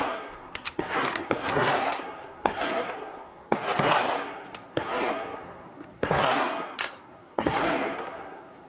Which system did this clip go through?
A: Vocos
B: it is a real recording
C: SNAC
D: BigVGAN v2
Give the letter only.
C